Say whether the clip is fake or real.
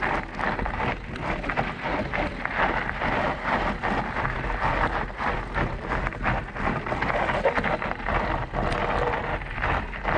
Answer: real